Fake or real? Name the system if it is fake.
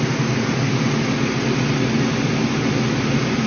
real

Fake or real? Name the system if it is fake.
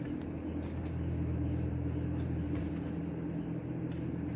real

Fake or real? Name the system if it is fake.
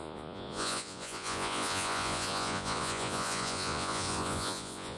fake, vocoder, Vocos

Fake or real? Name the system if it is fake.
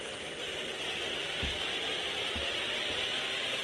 real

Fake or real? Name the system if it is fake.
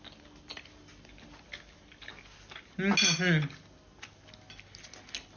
real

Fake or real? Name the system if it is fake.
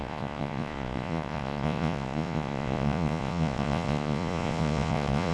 fake, vocoder, Vocos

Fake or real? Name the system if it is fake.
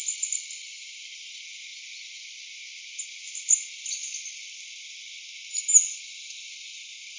real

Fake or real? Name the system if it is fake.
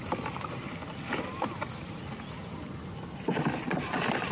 real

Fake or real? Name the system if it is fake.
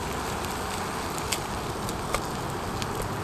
real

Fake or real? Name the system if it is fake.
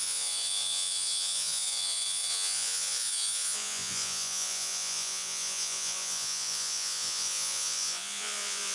fake, vocoder, Vocos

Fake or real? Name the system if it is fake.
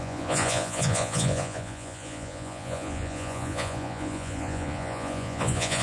fake, vocoder, Vocos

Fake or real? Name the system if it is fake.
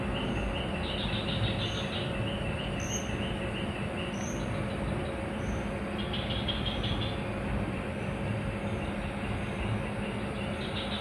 real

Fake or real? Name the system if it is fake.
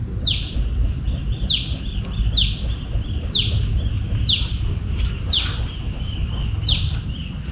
real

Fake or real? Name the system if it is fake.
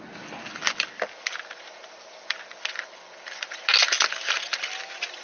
real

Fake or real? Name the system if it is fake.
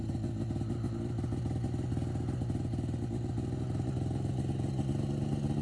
real